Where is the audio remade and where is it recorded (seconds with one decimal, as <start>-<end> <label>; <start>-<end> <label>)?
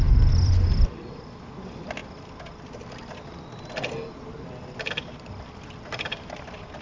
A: 0.0-2.0 remade; 2.0-5.8 recorded; 5.8-6.8 remade